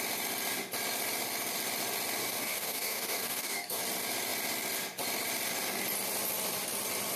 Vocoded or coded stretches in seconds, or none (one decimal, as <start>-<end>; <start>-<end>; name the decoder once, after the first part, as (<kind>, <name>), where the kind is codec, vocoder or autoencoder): 2.2-3.8 (codec, DAC)